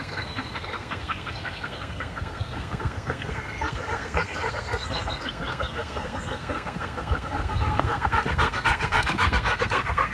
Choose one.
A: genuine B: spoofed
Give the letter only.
B